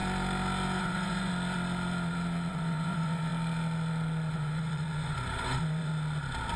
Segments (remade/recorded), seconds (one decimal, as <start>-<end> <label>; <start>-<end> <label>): 0.0-0.8 recorded; 0.8-1.3 remade; 1.3-2.5 recorded; 2.5-3.3 remade; 3.3-4.3 recorded; 4.3-5.9 remade; 5.9-6.6 recorded